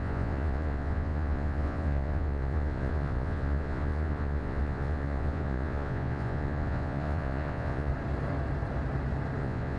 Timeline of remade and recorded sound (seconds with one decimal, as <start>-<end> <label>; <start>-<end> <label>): 0.0-7.9 remade; 7.9-9.4 recorded; 9.4-9.8 remade